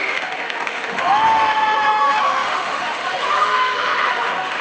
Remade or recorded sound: remade